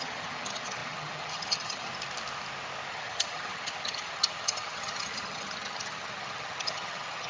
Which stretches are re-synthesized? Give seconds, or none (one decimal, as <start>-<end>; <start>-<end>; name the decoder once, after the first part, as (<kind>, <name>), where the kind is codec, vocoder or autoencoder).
0.0-1.9 (vocoder, HiFi-GAN); 2.9-7.3